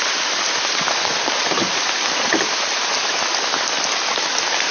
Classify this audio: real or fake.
real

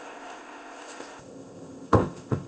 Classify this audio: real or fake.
fake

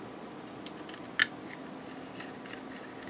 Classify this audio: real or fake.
real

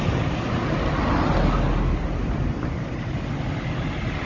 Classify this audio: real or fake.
real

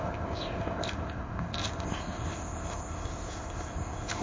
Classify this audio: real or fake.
fake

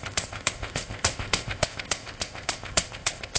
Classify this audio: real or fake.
fake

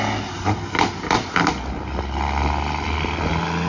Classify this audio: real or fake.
real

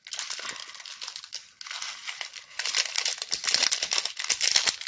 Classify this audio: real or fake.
real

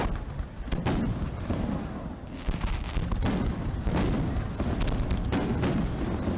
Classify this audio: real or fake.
real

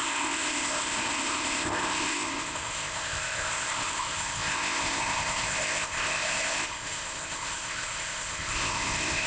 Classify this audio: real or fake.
fake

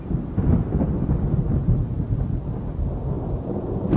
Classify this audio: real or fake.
real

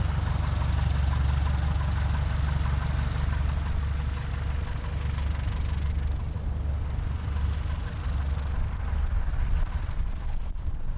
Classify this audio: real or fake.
real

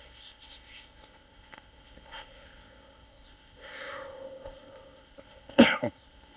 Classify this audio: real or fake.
fake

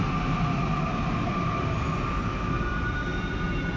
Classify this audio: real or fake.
real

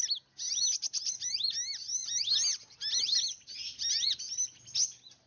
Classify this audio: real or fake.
real